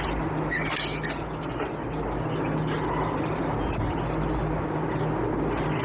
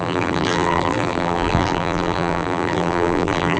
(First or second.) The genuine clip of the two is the first